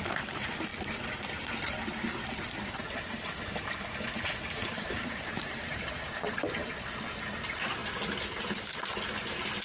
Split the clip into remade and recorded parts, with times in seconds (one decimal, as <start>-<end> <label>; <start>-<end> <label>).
0.0-4.6 recorded; 4.6-5.6 remade; 5.6-9.6 recorded